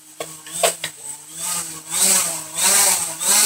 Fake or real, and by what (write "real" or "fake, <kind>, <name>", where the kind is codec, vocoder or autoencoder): real